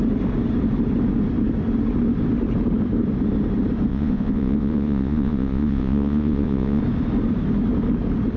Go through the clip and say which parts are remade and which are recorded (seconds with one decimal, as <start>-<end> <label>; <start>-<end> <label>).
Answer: 0.0-3.9 recorded; 3.9-6.8 remade; 6.8-8.4 recorded